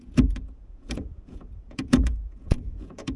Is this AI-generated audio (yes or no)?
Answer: yes